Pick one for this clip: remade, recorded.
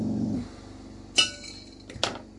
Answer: recorded